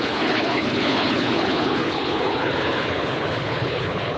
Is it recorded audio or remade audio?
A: remade